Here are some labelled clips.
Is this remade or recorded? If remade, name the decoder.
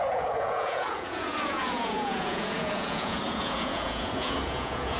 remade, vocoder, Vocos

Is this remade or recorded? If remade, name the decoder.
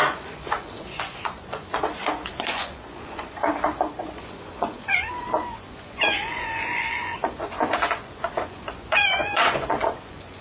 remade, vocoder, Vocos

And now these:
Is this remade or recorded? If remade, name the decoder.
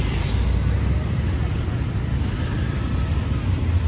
recorded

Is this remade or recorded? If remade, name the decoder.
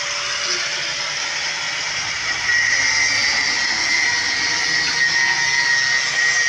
recorded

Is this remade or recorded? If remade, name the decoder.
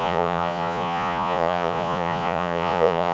remade, vocoder, Vocos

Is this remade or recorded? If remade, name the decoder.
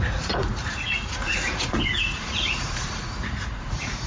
remade, vocoder, Vocos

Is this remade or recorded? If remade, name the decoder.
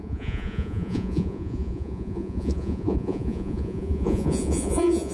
remade, vocoder, Vocos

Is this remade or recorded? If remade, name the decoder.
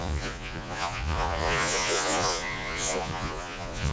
remade, vocoder, Vocos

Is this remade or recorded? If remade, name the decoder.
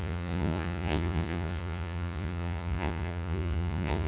remade, vocoder, Vocos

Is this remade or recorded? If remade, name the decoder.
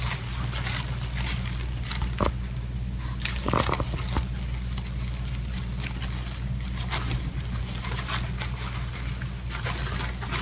recorded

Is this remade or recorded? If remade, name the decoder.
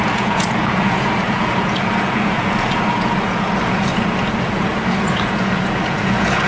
remade, vocoder, Vocos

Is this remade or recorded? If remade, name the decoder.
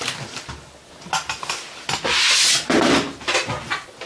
recorded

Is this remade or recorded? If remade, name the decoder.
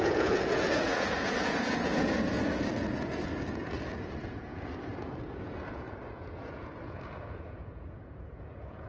remade, vocoder, Vocos